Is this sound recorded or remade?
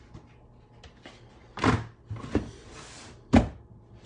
recorded